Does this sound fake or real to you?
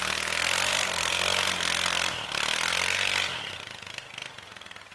real